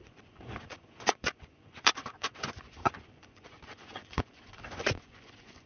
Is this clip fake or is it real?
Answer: fake